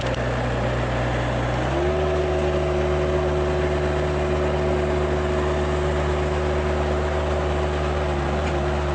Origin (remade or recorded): recorded